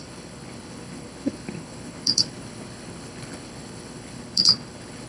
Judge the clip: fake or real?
fake